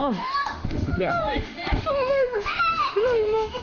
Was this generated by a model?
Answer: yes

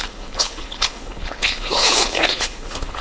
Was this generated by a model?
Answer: yes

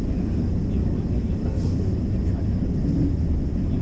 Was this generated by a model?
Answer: no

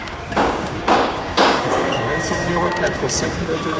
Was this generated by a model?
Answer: yes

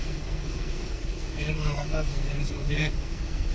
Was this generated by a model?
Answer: yes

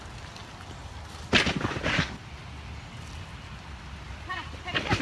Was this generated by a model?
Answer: no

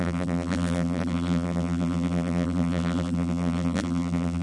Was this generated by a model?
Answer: yes